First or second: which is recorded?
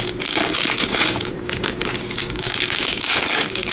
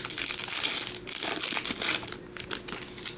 second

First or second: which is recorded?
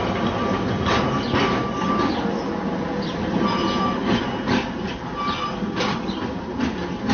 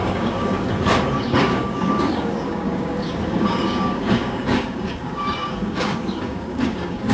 first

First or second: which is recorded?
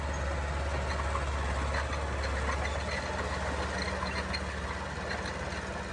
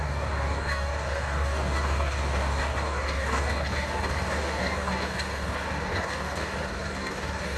first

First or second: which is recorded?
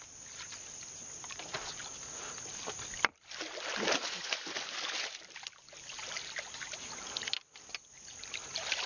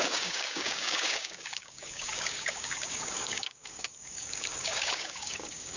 first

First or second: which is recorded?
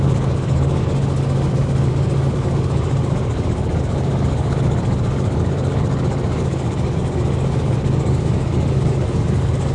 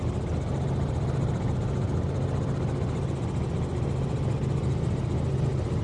second